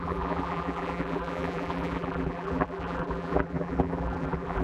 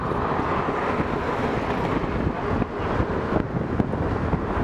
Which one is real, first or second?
second